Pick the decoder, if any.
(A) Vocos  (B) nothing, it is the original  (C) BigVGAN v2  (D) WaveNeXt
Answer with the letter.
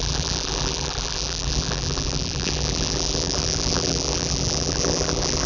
C